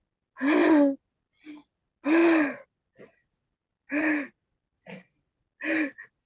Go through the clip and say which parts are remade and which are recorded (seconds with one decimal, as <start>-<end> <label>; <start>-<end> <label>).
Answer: 0.0-6.3 recorded